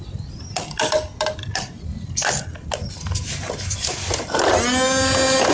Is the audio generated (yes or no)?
no